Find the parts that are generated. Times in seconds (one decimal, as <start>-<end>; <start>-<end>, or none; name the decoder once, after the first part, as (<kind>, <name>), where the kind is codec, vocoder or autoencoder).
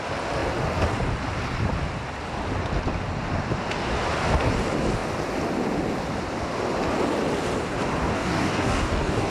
8.1-9.3 (codec, DAC)